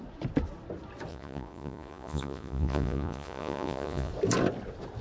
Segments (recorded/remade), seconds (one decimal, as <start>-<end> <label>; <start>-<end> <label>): 0.0-1.1 recorded; 1.1-4.1 remade; 4.1-5.0 recorded